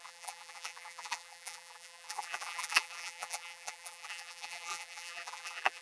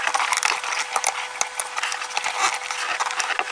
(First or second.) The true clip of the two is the second